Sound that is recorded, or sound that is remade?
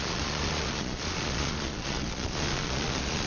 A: remade